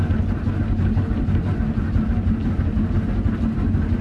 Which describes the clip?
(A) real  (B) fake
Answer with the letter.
A